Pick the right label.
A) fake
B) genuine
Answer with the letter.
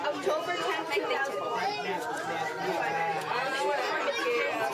A